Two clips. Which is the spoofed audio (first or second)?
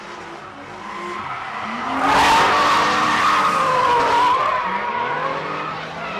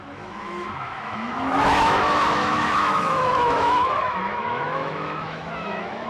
second